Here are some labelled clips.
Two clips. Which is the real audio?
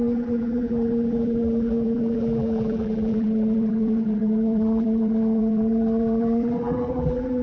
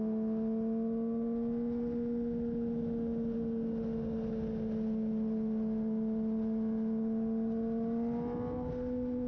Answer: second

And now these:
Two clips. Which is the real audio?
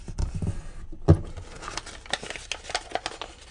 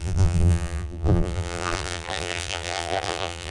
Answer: first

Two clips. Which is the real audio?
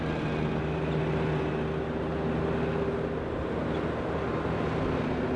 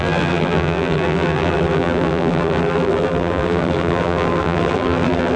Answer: first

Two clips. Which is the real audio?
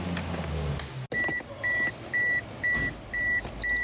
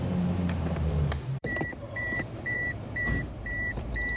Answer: first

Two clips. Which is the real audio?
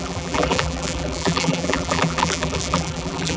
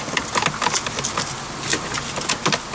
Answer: second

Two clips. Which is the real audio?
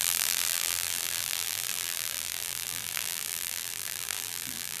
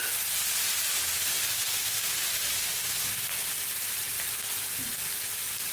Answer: second